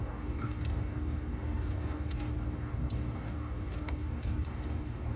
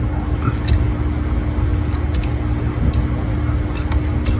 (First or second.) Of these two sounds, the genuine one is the second